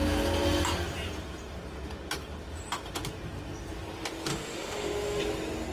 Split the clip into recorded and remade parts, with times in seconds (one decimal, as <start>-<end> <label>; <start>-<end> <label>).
0.0-4.3 recorded; 4.3-5.2 remade; 5.2-5.7 recorded